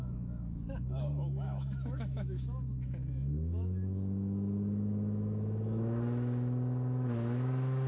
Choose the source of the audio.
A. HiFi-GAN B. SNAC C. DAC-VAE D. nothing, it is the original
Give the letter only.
C